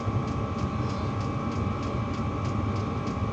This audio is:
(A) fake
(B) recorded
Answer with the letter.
B